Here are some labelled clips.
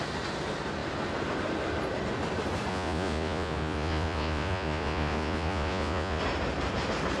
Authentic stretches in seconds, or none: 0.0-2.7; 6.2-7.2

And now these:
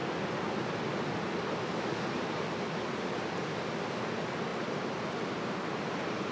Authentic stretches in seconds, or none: 0.0-6.3

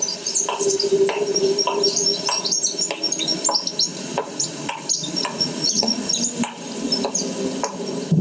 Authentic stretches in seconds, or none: 0.0-3.9; 4.8-5.2; 6.1-8.2

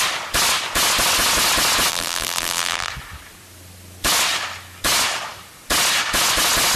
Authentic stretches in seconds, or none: 0.0-1.9; 2.9-6.8

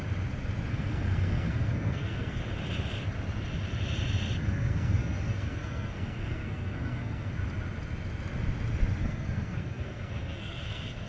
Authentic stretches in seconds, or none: 0.0-0.7; 2.4-4.4; 7.3-9.0

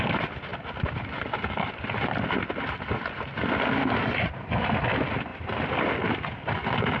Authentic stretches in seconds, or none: 0.0-7.0

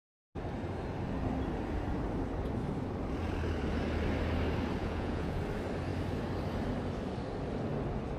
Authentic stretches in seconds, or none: 0.0-4.8; 5.4-8.2